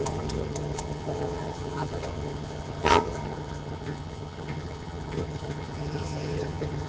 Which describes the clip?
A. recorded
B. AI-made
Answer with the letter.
B